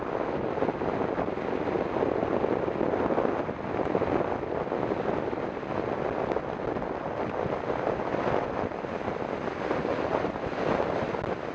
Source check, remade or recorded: recorded